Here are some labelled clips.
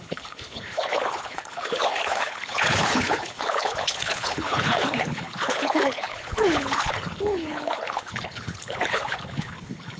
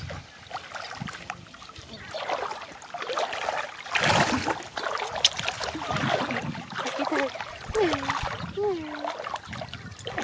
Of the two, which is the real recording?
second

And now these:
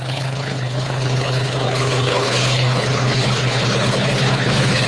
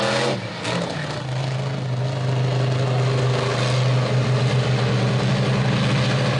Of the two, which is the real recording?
second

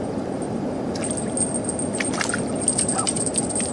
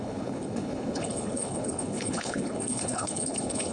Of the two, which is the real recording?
first